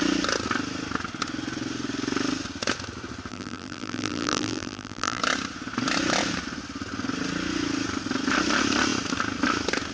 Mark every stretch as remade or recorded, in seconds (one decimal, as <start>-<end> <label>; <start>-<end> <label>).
0.0-3.3 recorded; 3.3-5.2 remade; 5.2-9.9 recorded